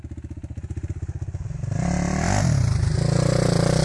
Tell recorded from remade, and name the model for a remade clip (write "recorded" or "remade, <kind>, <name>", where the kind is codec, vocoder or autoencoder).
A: recorded